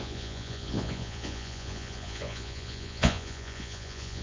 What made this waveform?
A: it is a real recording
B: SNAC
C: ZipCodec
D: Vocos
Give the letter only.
D